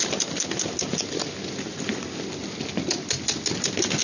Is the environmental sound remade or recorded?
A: recorded